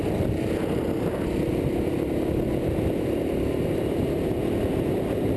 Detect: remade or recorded recorded